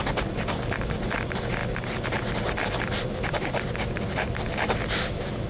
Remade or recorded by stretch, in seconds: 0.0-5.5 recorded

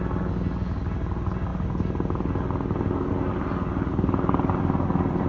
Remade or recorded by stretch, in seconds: 0.0-5.3 recorded

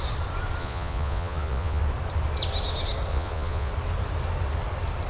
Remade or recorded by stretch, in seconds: 0.0-0.6 recorded; 0.6-1.8 remade; 1.8-3.1 recorded; 3.1-3.7 remade; 3.7-5.1 recorded

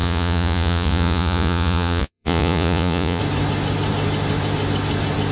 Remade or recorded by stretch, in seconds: 0.0-3.2 remade; 3.2-5.3 recorded

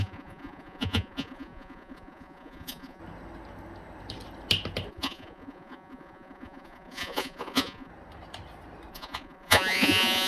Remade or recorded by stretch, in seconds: 0.0-3.0 remade; 3.0-4.9 recorded; 4.9-7.9 remade; 7.9-8.9 recorded; 8.9-10.3 remade